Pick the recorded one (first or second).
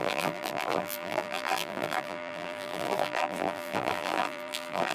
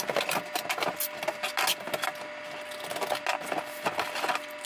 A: second